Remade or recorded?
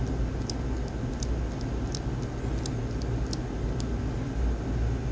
recorded